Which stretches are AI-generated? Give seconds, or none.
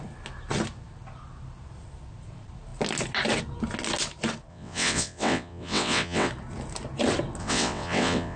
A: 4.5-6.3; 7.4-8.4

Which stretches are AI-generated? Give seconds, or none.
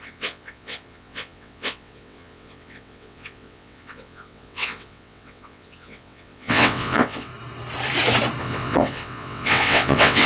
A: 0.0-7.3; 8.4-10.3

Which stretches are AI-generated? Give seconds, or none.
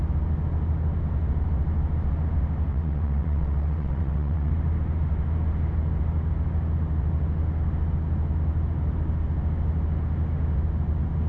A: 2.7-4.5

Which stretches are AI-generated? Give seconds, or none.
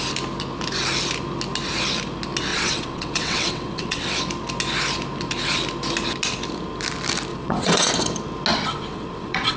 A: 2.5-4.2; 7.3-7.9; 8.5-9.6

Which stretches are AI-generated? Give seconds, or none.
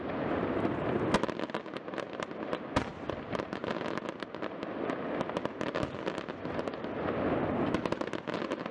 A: none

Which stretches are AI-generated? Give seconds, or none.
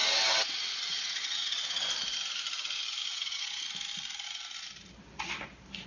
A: 0.0-1.9; 3.1-3.6